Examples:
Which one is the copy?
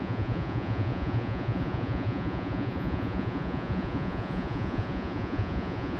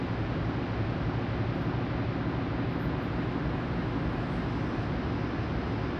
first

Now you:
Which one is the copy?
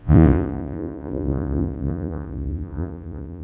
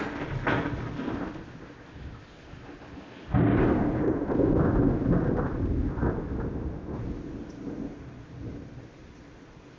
first